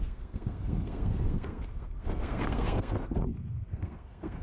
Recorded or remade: remade